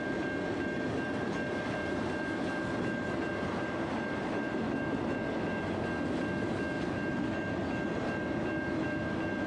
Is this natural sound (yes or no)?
yes